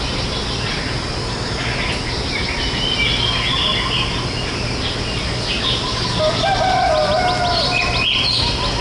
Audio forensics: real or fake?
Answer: real